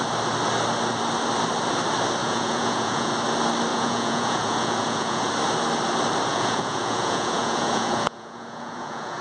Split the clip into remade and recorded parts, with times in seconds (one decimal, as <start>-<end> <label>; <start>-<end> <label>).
0.0-2.2 recorded; 2.2-3.1 remade; 3.1-3.7 recorded; 3.7-5.3 remade; 5.3-6.3 recorded; 6.3-9.2 remade